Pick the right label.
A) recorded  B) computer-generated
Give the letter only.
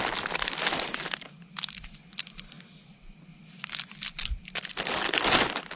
A